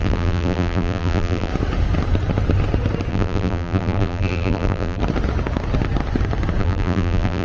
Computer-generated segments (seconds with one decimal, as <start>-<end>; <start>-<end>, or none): 0.0-1.5; 3.1-5.0; 6.6-7.4